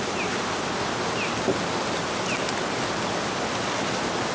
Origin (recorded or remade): recorded